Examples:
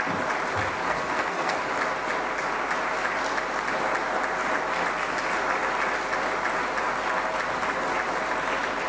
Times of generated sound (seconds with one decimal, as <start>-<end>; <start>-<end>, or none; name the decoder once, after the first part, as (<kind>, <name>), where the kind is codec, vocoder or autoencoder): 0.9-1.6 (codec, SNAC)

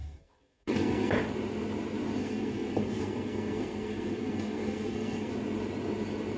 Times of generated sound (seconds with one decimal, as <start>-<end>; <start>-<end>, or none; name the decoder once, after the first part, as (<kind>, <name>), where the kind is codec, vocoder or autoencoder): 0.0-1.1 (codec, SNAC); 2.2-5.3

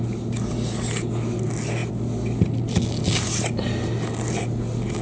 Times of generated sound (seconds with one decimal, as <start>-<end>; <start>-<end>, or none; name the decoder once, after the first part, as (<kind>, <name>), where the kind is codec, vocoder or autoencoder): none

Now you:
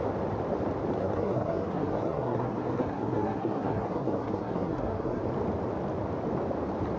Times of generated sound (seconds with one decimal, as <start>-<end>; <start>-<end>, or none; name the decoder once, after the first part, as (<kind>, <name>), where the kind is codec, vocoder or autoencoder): 1.0-5.2 (codec, SNAC)